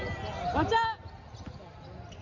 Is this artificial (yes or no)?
no